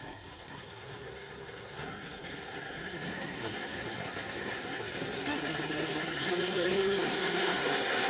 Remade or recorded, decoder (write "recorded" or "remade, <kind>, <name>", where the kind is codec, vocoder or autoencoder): remade, codec, SNAC